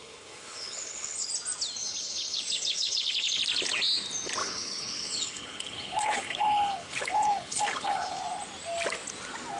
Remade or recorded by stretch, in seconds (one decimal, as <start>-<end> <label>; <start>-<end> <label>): 0.0-1.3 remade; 1.3-1.8 recorded; 1.8-3.4 remade; 3.4-4.4 recorded; 4.4-8.2 remade; 8.2-9.6 recorded